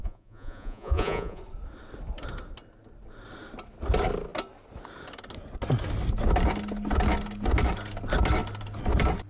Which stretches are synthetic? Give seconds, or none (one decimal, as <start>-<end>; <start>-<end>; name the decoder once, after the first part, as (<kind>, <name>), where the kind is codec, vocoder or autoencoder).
0.0-1.4 (vocoder, Vocos)